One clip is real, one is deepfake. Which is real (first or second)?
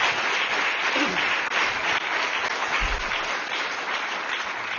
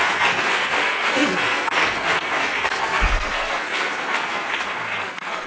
first